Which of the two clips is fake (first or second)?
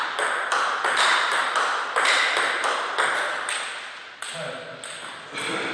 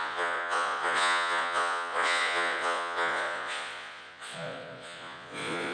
second